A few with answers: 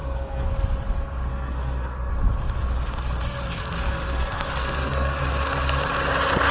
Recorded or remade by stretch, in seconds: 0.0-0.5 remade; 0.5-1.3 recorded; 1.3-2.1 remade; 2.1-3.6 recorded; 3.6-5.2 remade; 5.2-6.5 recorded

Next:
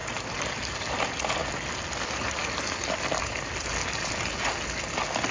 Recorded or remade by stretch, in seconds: 0.0-5.3 recorded

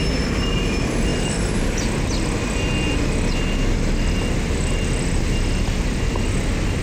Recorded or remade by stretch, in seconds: 0.0-6.8 recorded

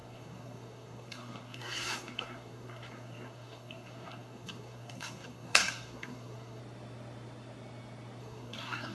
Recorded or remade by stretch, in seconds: 0.0-6.6 remade; 6.6-8.2 recorded; 8.2-8.9 remade

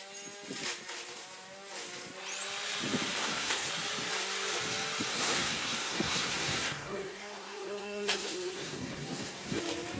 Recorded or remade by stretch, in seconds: 0.0-3.2 recorded; 3.2-3.7 remade; 3.7-5.1 recorded; 5.1-9.6 remade; 9.6-10.0 recorded

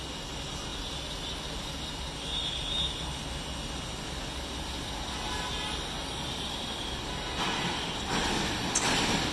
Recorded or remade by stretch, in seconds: 0.0-9.3 recorded

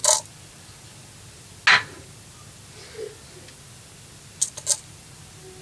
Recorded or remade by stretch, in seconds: 0.0-5.6 recorded

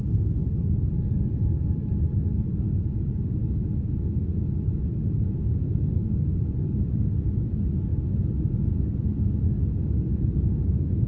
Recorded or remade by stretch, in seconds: 0.0-11.1 recorded